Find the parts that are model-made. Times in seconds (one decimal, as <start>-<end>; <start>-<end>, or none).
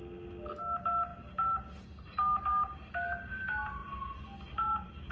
none